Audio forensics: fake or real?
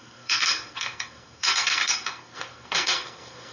fake